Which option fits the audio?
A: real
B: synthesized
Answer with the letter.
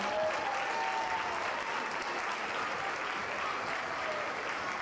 A